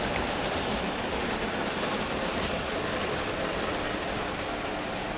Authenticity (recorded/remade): recorded